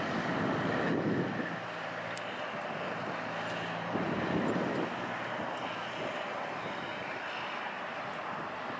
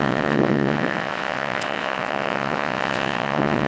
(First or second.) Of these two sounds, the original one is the first